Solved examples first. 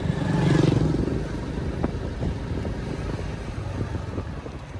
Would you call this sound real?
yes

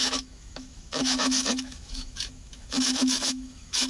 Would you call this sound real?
no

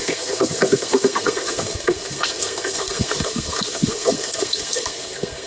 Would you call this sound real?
no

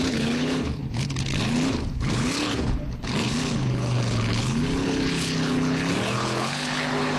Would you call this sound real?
no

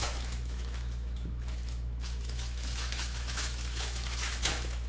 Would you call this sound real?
no